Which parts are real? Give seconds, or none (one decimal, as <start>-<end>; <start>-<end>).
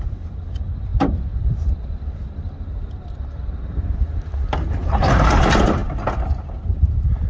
4.3-4.9; 5.8-6.6